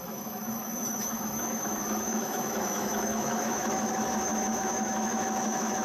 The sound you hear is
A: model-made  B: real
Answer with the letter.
A